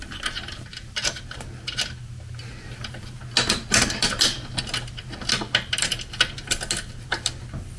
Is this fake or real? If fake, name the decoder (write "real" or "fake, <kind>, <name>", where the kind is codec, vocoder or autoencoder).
real